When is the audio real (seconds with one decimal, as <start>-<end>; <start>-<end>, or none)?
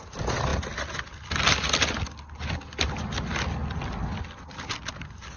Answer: 0.0-5.4